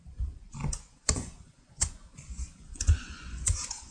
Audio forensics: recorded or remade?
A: remade